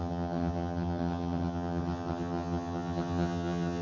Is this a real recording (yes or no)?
no